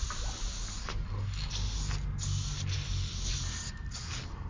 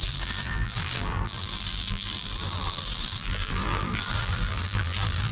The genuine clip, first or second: first